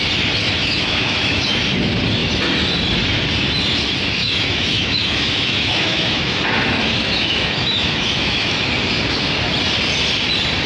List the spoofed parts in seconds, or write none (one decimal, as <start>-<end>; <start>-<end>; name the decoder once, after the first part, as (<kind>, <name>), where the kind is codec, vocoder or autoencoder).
0.6-1.5 (autoencoder, DAC-VAE); 4.2-6.4; 7.0-8.7